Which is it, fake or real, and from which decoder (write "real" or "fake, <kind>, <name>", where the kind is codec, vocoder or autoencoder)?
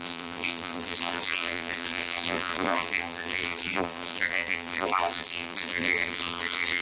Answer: fake, vocoder, BigVGAN v2